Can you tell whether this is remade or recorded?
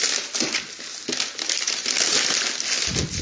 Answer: recorded